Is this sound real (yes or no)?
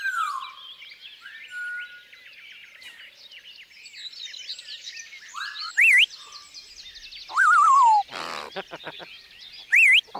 yes